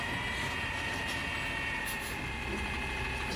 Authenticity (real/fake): real